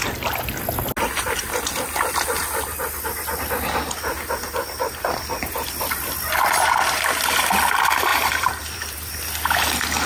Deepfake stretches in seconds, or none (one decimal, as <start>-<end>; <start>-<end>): 8.1-9.1